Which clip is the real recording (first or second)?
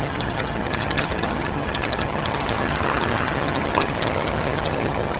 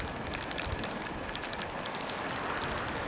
second